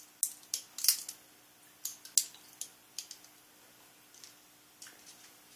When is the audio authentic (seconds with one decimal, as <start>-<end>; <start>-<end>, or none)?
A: 0.0-5.6